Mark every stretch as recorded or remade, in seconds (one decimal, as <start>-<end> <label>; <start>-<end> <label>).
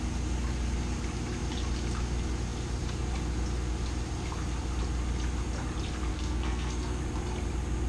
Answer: 0.0-6.1 recorded; 6.1-7.0 remade; 7.0-7.9 recorded